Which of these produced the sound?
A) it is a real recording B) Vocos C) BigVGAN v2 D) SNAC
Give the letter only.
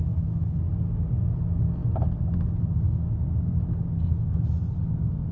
A